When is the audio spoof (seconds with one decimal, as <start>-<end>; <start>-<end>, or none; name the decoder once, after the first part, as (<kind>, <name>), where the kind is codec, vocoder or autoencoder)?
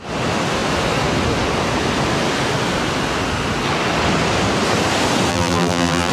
5.3-6.1 (vocoder, BigVGAN v2)